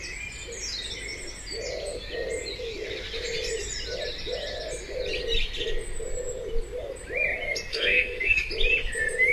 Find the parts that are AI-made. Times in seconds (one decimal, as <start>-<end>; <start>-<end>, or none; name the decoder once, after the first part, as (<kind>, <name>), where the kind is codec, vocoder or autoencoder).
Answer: 7.7-8.5 (codec, SNAC)